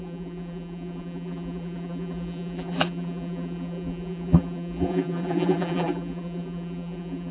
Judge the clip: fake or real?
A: fake